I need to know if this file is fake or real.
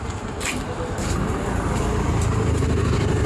real